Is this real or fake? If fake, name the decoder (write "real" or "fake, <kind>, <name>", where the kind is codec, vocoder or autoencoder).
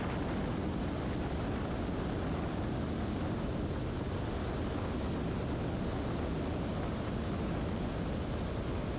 real